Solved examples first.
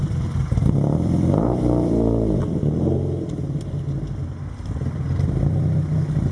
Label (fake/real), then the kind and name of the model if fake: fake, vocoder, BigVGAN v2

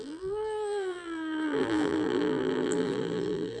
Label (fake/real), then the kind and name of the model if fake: fake, vocoder, BigVGAN v2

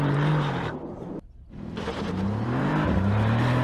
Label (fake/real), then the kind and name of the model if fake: fake, vocoder, BigVGAN v2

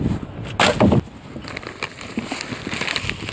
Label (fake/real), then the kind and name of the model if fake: real